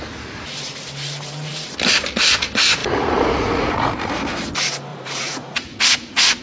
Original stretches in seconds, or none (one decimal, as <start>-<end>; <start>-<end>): 0.0-2.8; 4.1-4.9